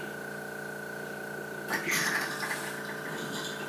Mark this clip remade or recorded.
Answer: recorded